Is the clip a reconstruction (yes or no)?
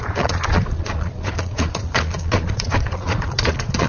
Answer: yes